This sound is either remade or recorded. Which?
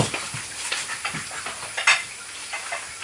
recorded